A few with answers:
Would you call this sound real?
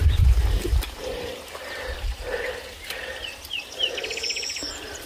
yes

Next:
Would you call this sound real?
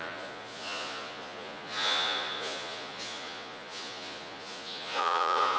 no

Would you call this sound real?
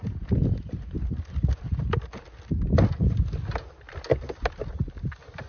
yes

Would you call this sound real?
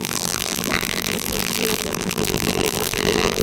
no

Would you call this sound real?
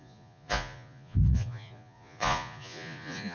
no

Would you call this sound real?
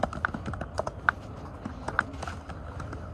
yes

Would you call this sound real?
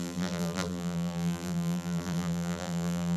no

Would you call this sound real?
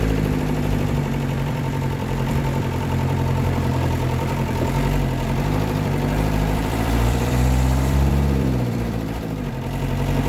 no